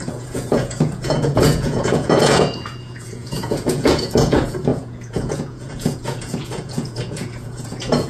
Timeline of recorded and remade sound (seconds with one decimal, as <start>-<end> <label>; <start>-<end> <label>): 0.0-8.1 remade